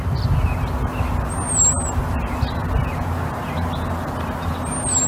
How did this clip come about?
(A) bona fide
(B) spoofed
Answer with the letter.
A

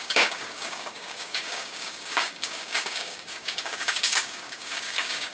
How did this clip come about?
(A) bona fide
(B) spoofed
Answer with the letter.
B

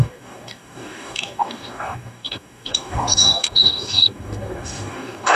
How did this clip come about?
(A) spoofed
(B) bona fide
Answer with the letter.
A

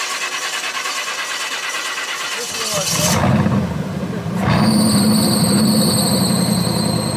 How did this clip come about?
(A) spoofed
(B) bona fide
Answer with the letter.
B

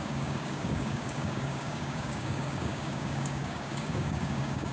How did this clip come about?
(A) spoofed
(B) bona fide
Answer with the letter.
A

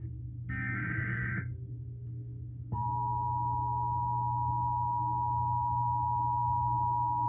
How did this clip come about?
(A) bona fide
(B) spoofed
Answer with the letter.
B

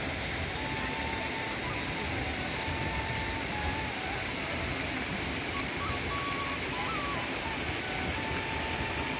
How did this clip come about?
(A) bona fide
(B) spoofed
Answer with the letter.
A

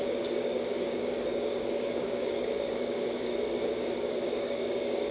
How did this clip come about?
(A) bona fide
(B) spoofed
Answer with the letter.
B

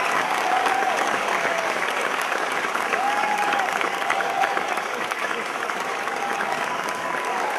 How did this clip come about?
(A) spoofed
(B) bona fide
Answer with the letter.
A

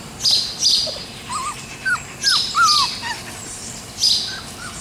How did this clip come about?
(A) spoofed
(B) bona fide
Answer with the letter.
B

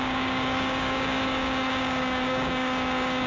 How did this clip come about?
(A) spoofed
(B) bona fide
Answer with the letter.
A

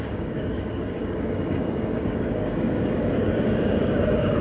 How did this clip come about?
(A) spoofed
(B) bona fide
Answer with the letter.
A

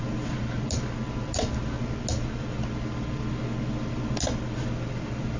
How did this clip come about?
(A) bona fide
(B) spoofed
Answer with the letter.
A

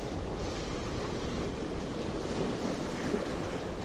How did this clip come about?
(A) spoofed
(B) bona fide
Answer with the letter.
B